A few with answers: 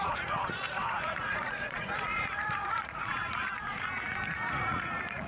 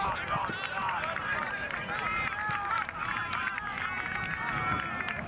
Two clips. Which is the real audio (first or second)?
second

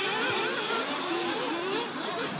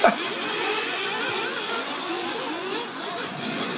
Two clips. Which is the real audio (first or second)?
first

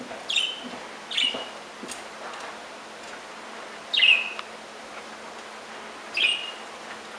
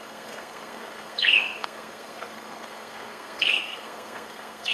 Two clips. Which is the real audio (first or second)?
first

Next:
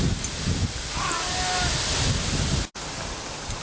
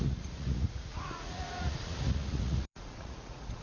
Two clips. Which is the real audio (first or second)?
first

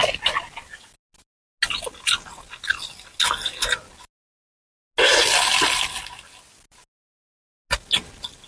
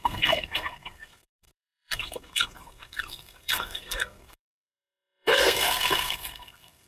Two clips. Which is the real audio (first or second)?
first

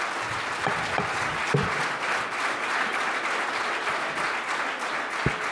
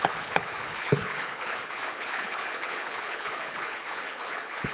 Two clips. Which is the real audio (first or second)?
first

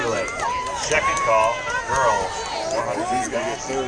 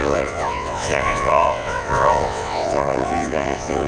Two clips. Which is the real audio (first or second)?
first